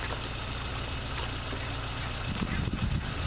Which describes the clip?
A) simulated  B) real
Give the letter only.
B